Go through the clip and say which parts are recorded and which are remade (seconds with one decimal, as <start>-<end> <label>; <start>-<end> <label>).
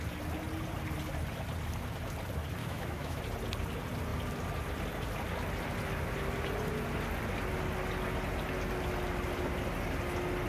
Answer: 0.0-2.6 recorded; 2.6-3.2 remade; 3.2-10.5 recorded